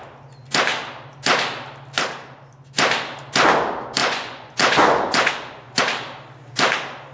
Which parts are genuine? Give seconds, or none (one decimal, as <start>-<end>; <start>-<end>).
0.0-4.0; 5.8-7.1